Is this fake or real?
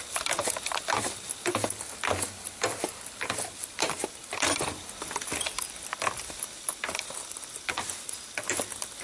real